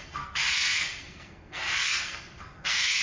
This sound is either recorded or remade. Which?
remade